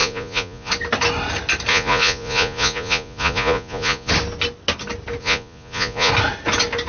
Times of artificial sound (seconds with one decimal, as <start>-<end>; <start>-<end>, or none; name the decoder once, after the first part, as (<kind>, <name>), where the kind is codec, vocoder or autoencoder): 0.0-0.7 (vocoder, Vocos); 1.7-4.1; 5.2-6.1